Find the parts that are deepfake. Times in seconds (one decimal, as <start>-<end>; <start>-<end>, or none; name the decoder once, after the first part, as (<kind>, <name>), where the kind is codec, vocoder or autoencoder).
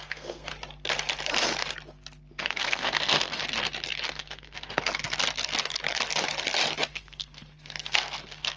0.0-0.5 (codec, SNAC); 2.4-3.4; 4.1-4.9; 6.9-8.6